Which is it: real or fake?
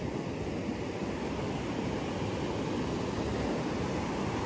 real